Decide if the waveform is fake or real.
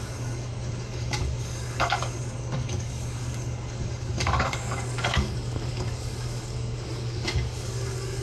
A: fake